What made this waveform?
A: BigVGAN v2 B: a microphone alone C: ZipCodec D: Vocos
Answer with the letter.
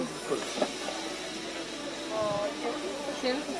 B